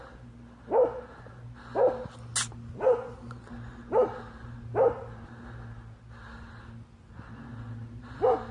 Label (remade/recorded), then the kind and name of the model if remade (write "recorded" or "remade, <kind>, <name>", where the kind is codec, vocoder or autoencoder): recorded